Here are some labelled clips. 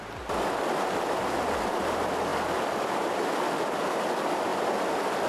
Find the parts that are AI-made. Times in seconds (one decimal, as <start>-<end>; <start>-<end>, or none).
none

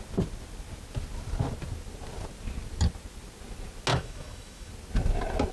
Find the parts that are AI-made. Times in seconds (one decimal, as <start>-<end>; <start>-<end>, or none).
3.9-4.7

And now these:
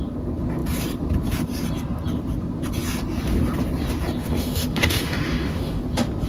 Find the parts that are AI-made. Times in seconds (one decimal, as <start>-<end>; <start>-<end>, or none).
4.2-5.8